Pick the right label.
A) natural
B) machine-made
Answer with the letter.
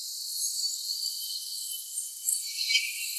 B